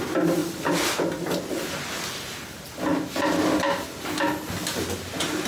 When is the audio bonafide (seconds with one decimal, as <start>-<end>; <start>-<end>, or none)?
0.0-5.5